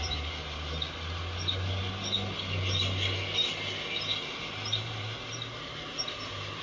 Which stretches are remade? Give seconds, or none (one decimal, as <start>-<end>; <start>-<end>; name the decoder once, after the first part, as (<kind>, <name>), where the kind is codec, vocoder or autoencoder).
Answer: 0.0-0.4 (vocoder, BigVGAN v2); 4.4-6.6